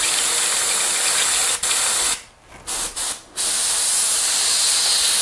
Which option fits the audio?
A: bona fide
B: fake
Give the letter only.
A